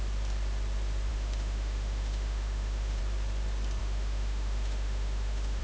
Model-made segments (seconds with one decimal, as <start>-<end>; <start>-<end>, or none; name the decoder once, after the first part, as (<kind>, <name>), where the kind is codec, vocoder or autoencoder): 1.1-3.0 (autoencoder, DAC-VAE); 3.8-5.6